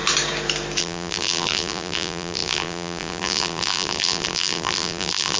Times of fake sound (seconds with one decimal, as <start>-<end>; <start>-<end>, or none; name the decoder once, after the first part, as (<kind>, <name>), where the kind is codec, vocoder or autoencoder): 0.8-5.4 (vocoder, BigVGAN v2)